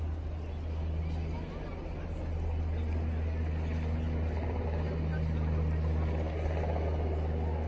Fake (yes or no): no